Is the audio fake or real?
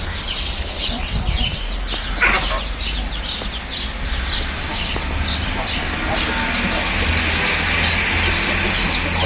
real